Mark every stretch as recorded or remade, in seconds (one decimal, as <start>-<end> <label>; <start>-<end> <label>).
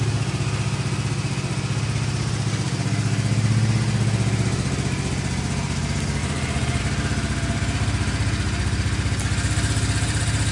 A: 0.0-6.2 recorded; 6.2-6.8 remade; 6.8-10.5 recorded